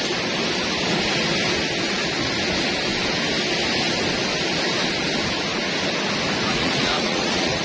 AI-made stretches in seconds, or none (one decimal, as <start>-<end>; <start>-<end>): 6.5-7.6